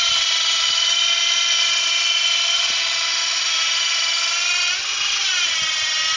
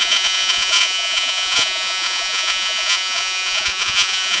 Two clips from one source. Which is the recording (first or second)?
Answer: first